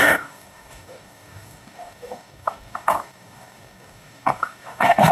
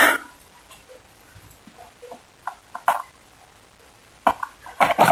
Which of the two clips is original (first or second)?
second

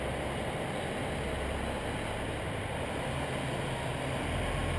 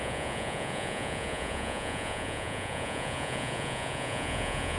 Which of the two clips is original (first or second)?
first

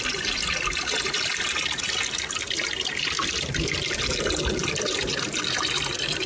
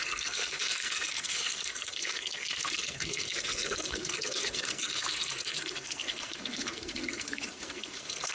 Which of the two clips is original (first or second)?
first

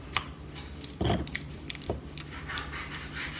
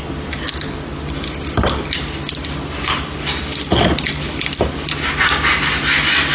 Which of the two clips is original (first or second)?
second